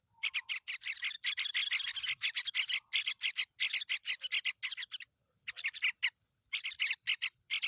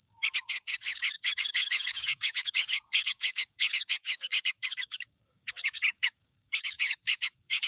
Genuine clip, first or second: first